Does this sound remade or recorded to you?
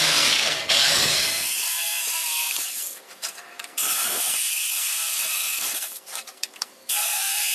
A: remade